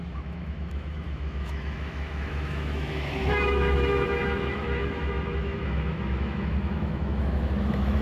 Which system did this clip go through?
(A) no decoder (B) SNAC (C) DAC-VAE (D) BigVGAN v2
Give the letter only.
C